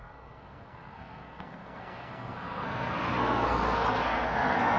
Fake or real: fake